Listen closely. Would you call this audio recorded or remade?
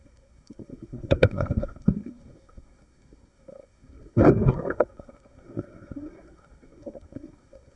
remade